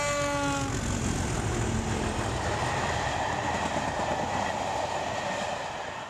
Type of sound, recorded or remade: recorded